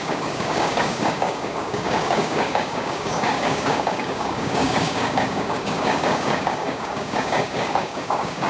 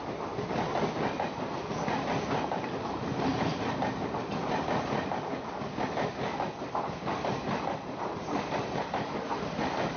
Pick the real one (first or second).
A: second